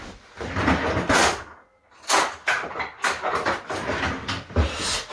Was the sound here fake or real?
real